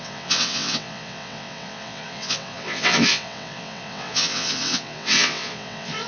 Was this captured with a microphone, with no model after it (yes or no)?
no